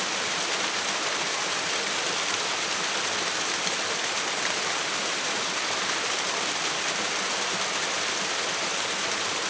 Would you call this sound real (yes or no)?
yes